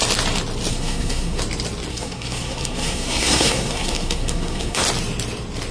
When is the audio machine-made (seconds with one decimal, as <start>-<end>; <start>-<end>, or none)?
0.7-1.4; 1.9-4.8